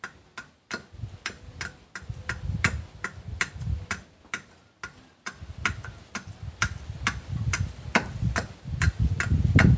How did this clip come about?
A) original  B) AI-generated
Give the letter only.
A